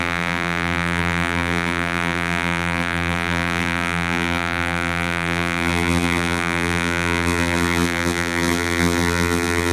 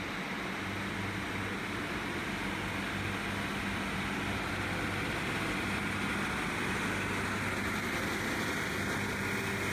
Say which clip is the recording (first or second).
second